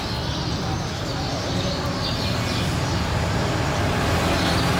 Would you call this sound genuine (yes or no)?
yes